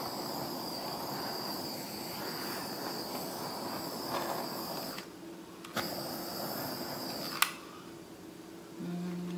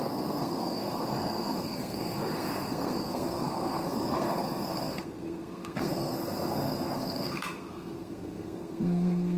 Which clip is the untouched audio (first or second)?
first